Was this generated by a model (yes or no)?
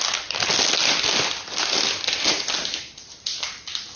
no